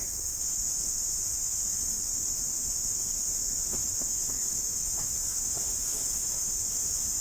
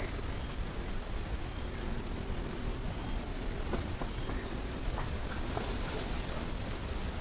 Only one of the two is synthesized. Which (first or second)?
first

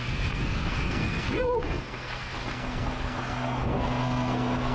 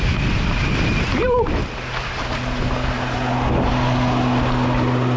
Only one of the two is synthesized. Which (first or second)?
first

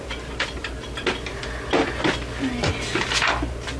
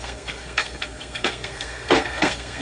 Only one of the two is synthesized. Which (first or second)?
second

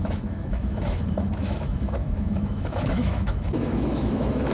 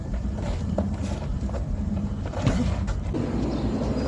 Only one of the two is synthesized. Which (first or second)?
first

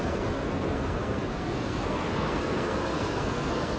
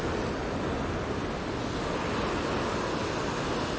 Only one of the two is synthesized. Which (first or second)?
first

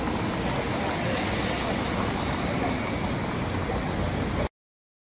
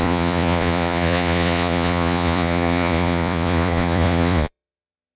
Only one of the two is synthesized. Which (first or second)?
second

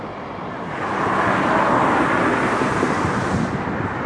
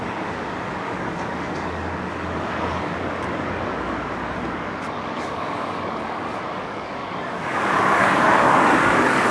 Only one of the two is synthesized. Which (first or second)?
second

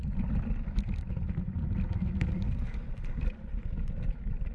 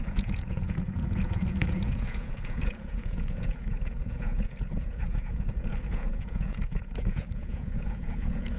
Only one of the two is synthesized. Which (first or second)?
second